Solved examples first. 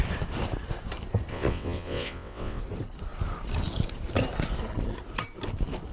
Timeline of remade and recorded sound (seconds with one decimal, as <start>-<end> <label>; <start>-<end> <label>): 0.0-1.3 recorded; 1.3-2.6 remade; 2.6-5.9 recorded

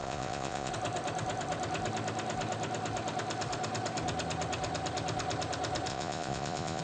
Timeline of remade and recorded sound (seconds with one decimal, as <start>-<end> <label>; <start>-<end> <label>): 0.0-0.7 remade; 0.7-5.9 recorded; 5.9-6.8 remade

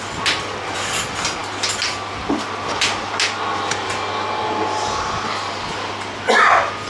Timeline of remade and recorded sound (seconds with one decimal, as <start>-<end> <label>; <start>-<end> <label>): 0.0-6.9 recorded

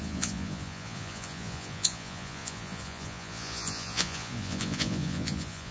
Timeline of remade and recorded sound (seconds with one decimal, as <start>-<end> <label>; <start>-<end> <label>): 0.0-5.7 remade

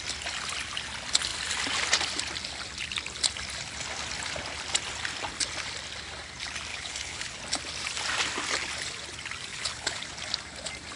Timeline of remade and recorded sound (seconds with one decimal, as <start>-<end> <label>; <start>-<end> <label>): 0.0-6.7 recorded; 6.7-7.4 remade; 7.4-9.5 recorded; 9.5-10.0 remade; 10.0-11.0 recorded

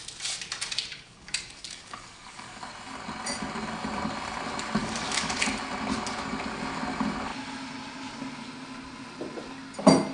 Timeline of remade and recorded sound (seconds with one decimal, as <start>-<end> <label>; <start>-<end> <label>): 0.0-0.9 recorded; 0.9-2.7 remade; 2.7-4.8 recorded; 4.8-5.3 remade; 5.3-10.1 recorded